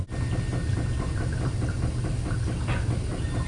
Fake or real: real